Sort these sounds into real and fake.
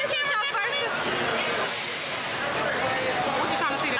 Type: real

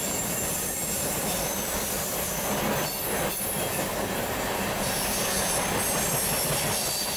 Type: real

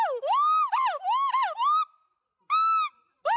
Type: real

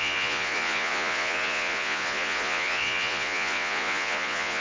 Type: fake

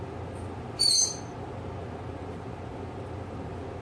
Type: real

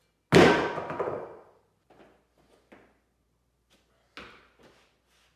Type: real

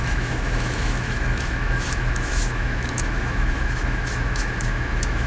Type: fake